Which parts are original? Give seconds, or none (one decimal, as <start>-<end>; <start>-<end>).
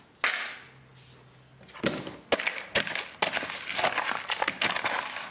0.0-5.3